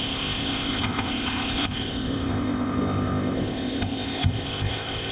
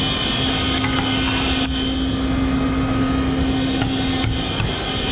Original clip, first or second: second